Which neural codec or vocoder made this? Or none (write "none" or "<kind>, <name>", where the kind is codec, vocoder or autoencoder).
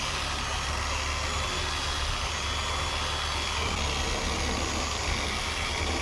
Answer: none